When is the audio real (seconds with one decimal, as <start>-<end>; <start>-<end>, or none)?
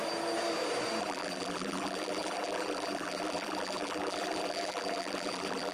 0.0-1.0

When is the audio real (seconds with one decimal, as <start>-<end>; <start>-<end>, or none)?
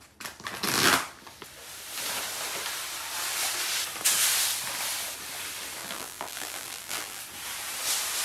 0.0-5.8; 7.2-8.2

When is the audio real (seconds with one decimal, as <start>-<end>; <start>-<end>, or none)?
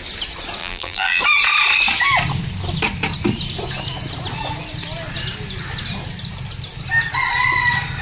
0.0-0.6; 1.2-8.0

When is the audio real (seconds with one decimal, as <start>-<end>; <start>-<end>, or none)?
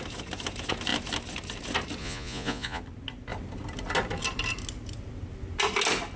0.0-2.0; 2.8-6.2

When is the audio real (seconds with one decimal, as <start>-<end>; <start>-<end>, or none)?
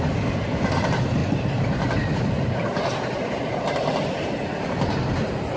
0.0-5.6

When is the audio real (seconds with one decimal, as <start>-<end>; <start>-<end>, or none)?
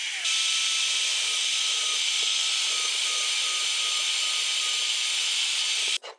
0.0-6.2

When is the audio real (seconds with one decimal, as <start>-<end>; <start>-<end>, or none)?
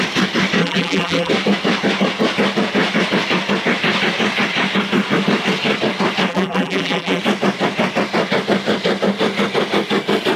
0.0-0.6; 1.3-6.3; 7.2-10.4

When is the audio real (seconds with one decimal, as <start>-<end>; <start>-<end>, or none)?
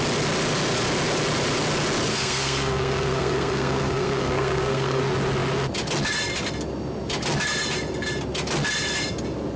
0.0-2.1; 5.0-9.6